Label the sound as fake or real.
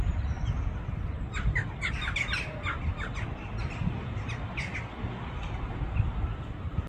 real